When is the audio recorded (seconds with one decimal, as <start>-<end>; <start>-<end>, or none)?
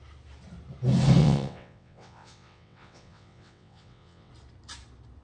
0.0-1.2; 4.3-5.2